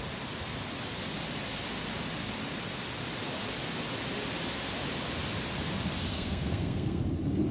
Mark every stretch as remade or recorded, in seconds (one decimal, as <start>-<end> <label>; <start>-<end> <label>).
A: 0.0-6.1 recorded; 6.1-7.0 remade; 7.0-7.5 recorded